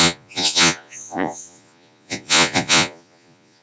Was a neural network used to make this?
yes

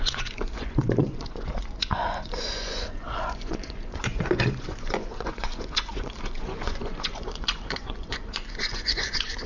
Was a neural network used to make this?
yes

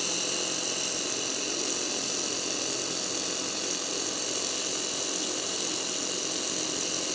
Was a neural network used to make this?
no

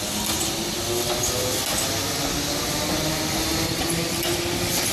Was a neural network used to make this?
no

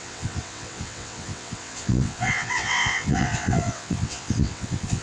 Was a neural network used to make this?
yes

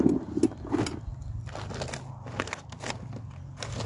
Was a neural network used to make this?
no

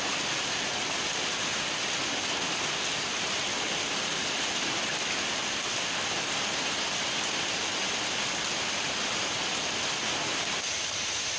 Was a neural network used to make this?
no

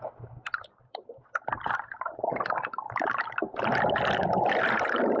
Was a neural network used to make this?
no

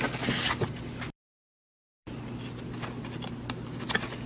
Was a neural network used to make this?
no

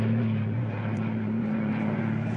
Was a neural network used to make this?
yes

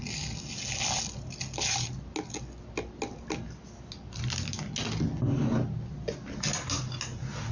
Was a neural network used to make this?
no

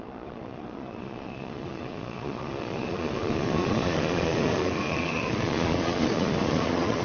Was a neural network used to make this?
yes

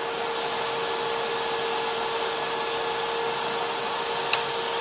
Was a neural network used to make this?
no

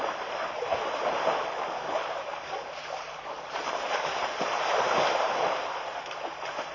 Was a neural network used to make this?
yes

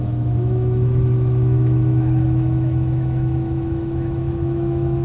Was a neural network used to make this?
yes